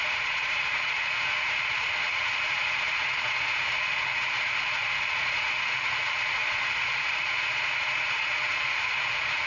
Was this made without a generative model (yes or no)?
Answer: no